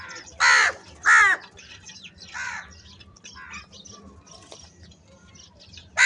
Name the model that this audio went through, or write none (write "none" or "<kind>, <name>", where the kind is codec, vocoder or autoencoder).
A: none